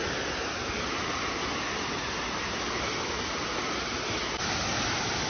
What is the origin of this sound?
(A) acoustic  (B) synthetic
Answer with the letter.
A